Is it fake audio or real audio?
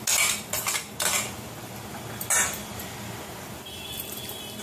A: real